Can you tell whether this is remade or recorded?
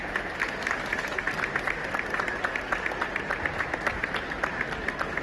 recorded